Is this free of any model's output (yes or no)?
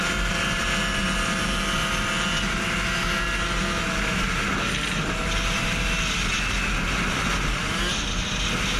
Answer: yes